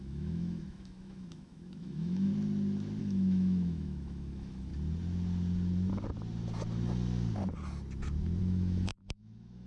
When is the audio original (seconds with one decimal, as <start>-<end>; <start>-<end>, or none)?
2.3-3.0; 4.7-8.4